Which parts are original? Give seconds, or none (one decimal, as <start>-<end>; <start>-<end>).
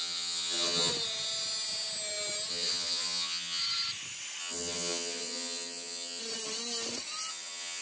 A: 0.9-2.5; 3.6-4.4; 6.2-7.3